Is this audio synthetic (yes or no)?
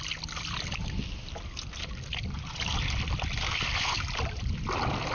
no